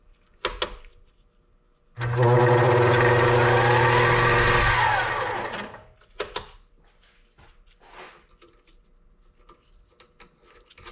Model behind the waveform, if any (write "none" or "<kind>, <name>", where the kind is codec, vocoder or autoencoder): none